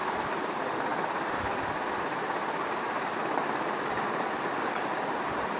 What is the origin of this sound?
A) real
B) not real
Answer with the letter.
A